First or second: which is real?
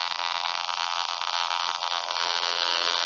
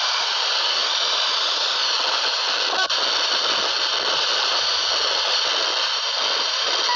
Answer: second